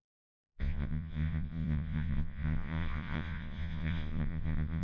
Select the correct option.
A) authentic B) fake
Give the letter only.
B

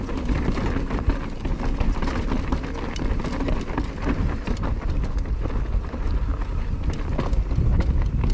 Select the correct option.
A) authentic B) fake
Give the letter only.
A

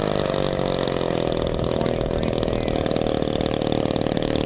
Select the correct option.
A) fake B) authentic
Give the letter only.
B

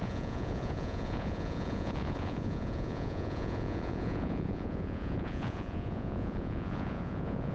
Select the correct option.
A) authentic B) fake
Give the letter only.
B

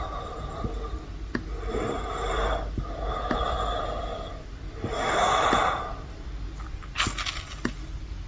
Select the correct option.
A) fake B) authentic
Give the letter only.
B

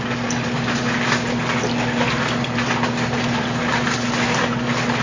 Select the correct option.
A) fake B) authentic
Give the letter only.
B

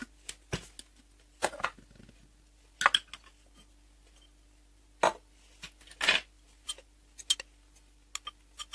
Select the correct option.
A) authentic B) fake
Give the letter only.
A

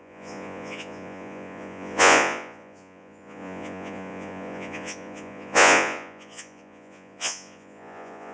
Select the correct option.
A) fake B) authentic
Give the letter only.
A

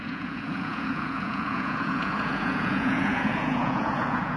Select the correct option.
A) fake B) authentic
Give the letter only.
A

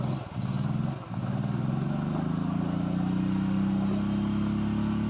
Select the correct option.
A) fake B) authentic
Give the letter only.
B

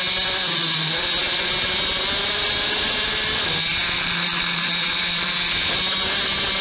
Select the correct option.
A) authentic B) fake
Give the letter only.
A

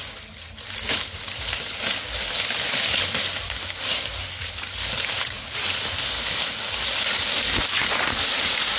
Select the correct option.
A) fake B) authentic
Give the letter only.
B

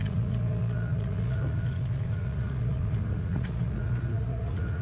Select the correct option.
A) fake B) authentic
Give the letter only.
A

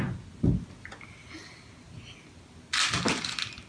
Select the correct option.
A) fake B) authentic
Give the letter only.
B